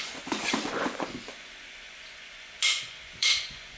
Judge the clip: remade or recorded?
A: remade